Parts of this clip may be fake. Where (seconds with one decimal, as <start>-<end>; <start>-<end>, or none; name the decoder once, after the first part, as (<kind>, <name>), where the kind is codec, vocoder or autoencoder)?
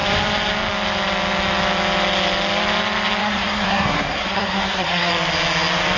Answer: 3.2-5.1 (codec, SNAC)